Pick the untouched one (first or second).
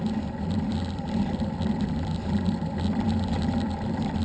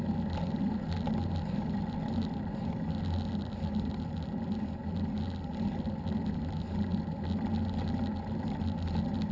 second